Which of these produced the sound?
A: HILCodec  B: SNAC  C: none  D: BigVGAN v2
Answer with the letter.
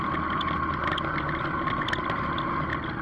C